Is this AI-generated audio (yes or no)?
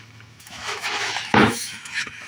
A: yes